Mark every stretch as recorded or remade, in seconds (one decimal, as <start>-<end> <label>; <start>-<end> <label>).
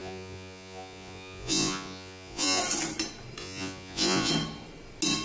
0.0-2.6 remade; 2.6-3.4 recorded; 3.4-4.3 remade; 4.3-5.2 recorded